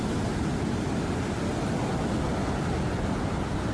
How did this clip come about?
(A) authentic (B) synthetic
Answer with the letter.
A